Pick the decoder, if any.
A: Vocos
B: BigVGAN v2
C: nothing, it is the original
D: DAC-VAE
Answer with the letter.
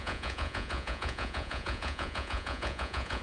A